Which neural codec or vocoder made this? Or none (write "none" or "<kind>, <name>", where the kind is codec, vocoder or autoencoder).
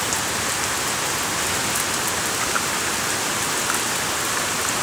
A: none